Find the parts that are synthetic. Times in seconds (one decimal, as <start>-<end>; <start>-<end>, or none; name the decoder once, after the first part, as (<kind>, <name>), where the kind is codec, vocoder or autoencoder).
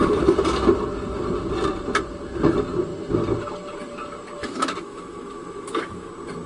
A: 4.4-6.1 (autoencoder, DAC-VAE)